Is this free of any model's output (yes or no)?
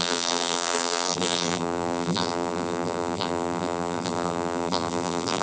no